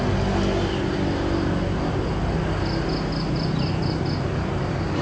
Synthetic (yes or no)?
no